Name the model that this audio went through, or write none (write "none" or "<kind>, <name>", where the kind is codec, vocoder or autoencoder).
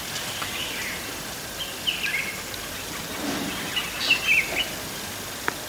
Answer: none